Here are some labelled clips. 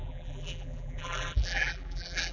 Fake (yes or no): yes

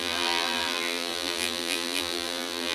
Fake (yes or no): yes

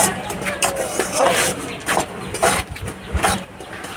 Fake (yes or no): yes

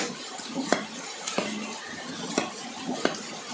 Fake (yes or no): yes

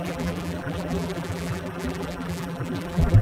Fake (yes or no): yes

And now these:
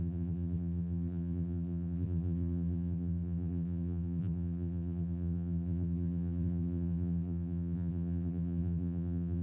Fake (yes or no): yes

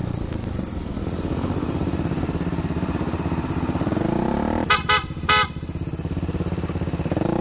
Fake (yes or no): no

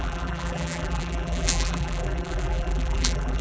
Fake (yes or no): yes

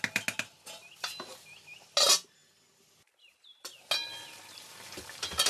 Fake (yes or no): no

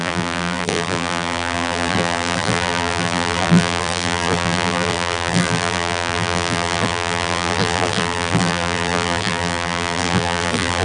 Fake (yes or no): yes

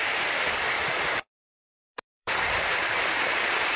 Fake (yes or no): yes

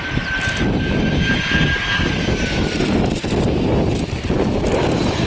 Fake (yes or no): no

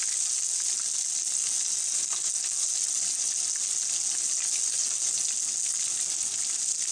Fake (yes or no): no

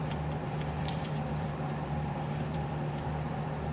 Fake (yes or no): yes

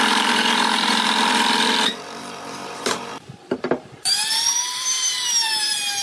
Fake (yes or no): yes